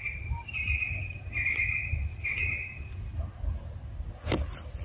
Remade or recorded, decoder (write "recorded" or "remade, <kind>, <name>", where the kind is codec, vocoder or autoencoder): recorded